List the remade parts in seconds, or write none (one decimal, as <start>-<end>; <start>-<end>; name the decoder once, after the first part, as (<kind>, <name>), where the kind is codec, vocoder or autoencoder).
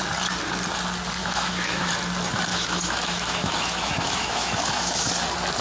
1.2-1.9 (autoencoder, DAC-VAE); 2.5-5.1